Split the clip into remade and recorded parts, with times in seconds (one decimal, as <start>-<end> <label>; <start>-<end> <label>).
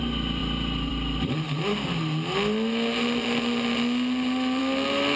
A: 0.0-5.2 recorded